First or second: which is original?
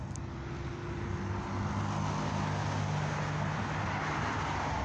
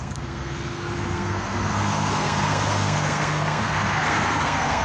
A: first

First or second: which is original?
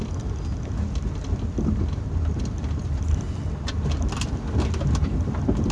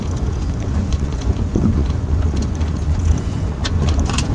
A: first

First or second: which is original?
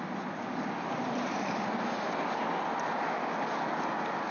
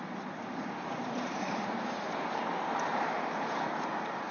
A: first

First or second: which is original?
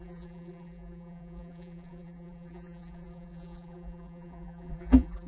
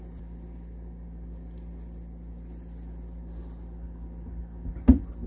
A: second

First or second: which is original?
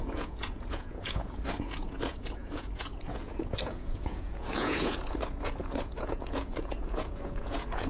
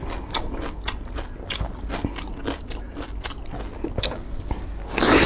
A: second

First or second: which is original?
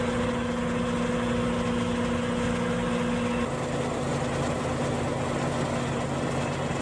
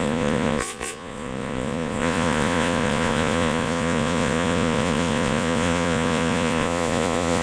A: first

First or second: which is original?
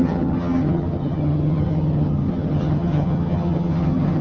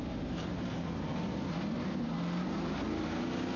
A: second